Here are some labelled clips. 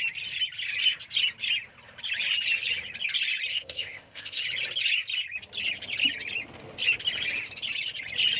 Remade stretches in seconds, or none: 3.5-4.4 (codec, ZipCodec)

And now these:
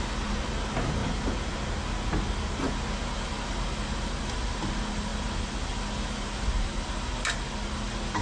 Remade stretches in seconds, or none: none